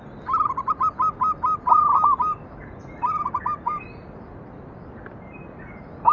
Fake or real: real